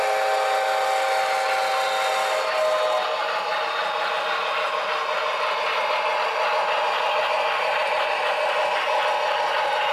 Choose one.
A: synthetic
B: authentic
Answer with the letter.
B